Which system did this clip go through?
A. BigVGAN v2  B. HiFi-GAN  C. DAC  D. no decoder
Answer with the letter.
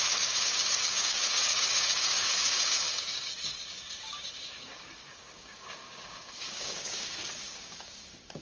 C